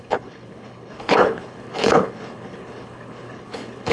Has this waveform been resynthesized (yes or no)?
yes